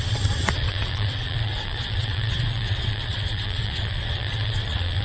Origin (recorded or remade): remade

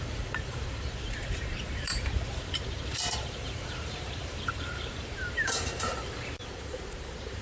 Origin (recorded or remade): remade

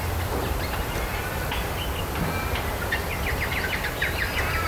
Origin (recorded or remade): remade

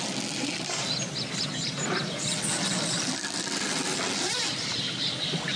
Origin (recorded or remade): recorded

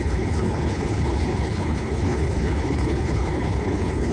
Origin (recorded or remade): remade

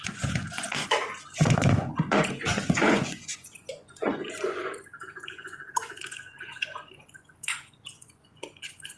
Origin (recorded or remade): remade